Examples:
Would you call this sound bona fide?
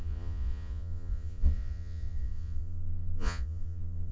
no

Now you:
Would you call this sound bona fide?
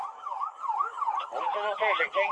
yes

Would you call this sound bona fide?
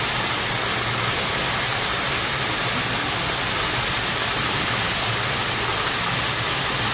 yes